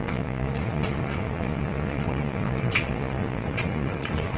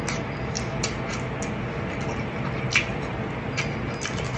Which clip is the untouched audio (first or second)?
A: second